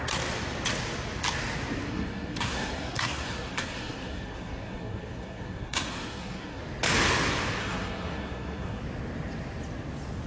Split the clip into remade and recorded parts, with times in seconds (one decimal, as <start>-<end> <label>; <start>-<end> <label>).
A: 0.0-1.9 recorded; 1.9-6.6 remade; 6.6-7.6 recorded; 7.6-8.8 remade; 8.8-10.3 recorded